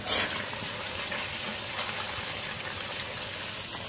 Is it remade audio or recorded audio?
recorded